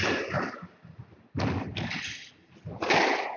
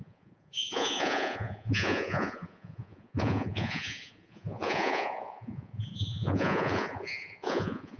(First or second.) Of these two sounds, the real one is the first